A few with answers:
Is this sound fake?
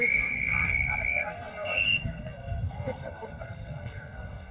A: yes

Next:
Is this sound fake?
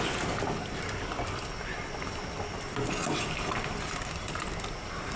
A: no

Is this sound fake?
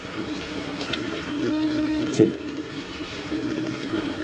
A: yes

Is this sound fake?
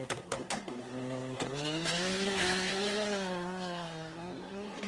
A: yes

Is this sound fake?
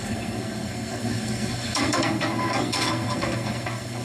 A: yes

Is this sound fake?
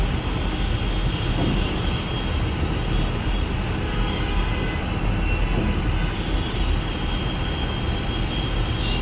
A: no